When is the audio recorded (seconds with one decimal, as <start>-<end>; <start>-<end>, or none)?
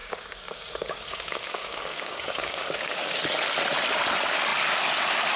3.2-5.4